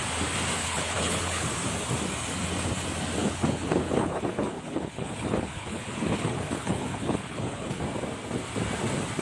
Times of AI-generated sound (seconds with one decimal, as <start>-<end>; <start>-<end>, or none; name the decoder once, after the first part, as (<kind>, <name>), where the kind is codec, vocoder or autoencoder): 0.6-1.5 (codec, HILCodec); 3.2-7.8